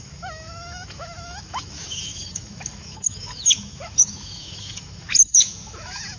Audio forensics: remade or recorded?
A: remade